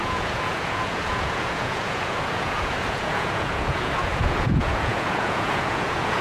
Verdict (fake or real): fake